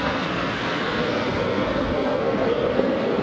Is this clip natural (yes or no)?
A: no